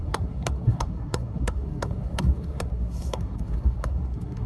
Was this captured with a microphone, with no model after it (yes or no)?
no